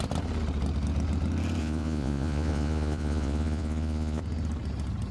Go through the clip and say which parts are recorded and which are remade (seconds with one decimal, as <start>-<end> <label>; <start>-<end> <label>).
0.0-1.6 recorded; 1.6-4.2 remade; 4.2-5.1 recorded